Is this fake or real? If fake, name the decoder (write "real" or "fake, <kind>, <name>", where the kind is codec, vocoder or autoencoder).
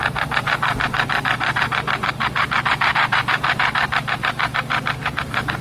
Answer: fake, vocoder, BigVGAN v2